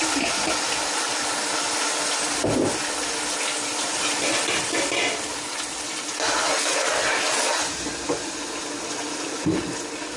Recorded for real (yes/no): yes